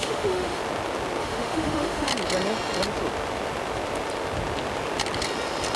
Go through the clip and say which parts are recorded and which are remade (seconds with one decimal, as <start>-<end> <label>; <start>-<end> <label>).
0.0-0.6 remade; 0.6-1.2 recorded; 1.2-2.1 remade; 2.1-5.8 recorded